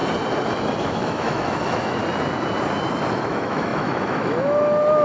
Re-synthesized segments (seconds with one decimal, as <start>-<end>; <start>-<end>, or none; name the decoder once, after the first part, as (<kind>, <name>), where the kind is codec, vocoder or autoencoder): 0.8-2.0 (autoencoder, DAC-VAE); 3.1-5.0